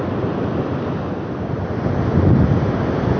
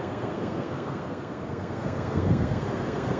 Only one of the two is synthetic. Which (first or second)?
second